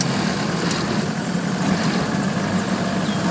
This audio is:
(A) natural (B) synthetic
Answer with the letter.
A